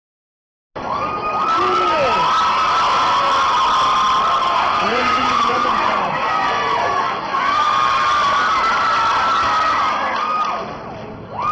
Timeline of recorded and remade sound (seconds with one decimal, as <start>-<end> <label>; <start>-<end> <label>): 0.0-4.4 recorded; 4.4-7.9 remade; 7.9-11.5 recorded

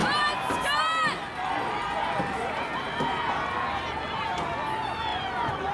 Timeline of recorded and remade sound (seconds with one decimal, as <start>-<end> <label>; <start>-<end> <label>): 0.0-5.1 recorded; 5.1-5.7 remade

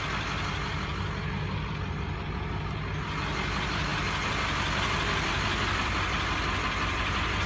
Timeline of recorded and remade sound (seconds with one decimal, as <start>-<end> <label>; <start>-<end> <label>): 0.0-7.5 recorded

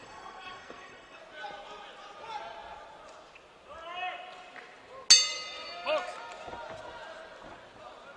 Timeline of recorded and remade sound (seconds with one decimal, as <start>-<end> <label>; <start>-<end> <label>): 0.0-1.2 remade; 1.2-8.2 recorded

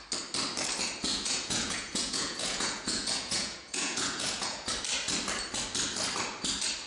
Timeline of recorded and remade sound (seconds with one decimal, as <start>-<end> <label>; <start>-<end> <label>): 0.0-1.1 recorded; 1.1-4.7 remade; 4.7-6.9 recorded

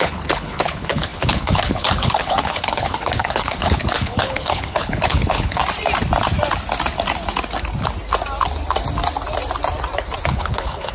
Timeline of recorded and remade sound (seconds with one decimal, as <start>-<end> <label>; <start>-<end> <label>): 0.0-5.6 remade; 5.6-10.3 recorded; 10.3-10.9 remade

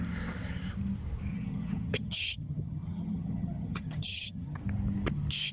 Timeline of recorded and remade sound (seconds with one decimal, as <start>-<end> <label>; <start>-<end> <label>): 0.0-1.3 recorded; 1.3-4.6 remade; 4.6-5.5 recorded